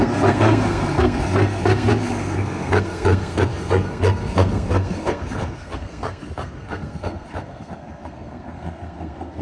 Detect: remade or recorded remade